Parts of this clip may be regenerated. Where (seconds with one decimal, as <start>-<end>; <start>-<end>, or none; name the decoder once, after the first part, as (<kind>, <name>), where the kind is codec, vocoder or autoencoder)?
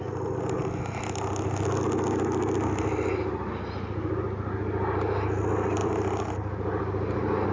5.8-6.3 (vocoder, BigVGAN v2)